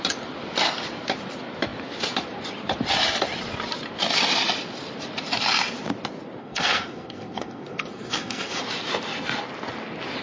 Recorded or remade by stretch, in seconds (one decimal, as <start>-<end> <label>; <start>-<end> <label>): 0.0-6.4 recorded; 6.4-8.6 remade; 8.6-10.2 recorded